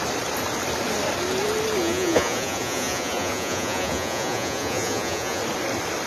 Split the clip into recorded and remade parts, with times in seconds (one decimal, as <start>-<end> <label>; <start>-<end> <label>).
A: 0.0-1.8 recorded; 1.8-5.4 remade; 5.4-6.1 recorded